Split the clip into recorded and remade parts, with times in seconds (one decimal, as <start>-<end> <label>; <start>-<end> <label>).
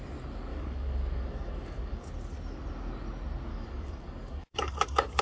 0.0-0.5 recorded; 0.5-2.1 remade; 2.1-3.5 recorded; 3.5-5.2 remade